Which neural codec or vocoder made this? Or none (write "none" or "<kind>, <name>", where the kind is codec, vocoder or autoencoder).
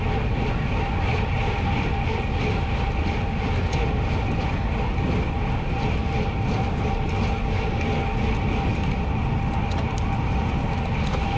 none